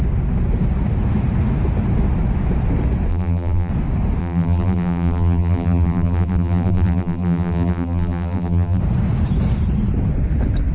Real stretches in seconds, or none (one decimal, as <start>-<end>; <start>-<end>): 0.0-3.1; 3.7-4.2; 8.8-10.7